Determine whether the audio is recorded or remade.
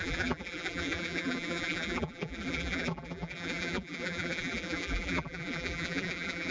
remade